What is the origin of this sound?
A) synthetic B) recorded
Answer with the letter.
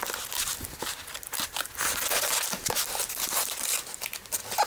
B